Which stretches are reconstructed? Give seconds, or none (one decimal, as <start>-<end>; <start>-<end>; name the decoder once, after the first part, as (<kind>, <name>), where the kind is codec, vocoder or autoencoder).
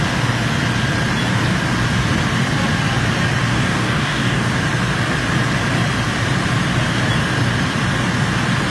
3.5-4.5 (codec, DAC)